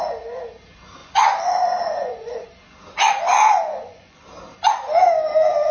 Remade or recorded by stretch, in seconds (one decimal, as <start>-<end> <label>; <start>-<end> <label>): 0.0-1.0 recorded; 1.0-2.5 remade; 2.5-3.3 recorded; 3.3-4.2 remade; 4.2-5.7 recorded